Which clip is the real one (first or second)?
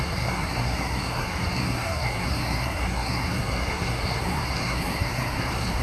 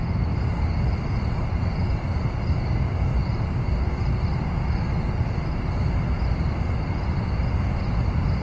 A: second